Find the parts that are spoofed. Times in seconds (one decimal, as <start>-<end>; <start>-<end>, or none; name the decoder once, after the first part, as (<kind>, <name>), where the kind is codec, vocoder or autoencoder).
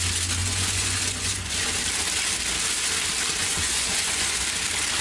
0.4-1.7 (vocoder, Vocos); 3.4-4.4